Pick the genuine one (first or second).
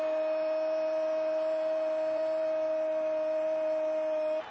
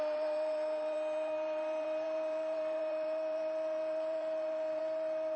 first